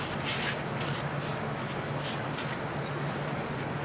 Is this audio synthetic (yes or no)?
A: no